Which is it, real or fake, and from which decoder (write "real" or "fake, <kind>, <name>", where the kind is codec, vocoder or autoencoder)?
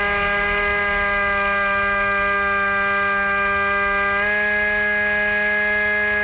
real